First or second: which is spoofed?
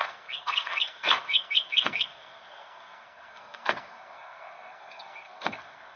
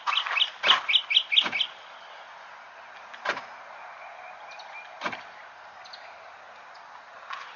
first